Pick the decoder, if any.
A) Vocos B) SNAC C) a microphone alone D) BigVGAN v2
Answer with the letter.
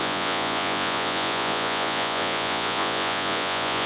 A